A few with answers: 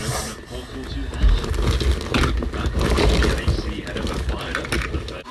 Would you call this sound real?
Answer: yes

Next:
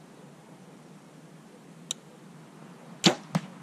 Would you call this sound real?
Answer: yes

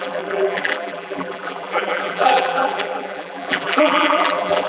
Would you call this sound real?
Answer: no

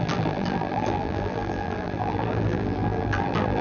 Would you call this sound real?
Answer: no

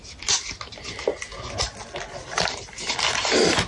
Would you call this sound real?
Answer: yes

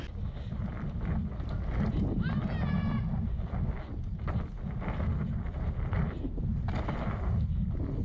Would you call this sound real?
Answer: yes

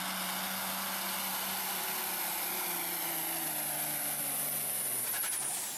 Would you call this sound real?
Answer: yes